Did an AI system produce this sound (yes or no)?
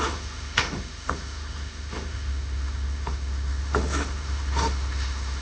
yes